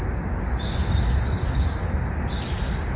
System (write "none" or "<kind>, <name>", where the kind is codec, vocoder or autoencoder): none